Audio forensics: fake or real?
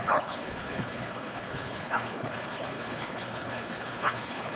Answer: fake